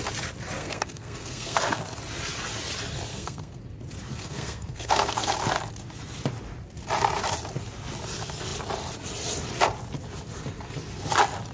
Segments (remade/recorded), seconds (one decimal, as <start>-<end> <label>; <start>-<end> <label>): 0.0-0.6 recorded; 0.6-1.8 remade; 1.8-3.1 recorded; 3.1-3.6 remade; 3.6-4.1 recorded; 4.1-5.3 remade; 5.3-11.5 recorded